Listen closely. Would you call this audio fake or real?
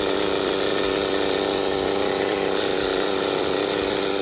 real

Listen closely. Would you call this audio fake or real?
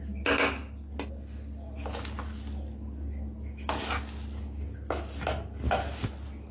real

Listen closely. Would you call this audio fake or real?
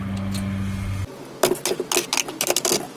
real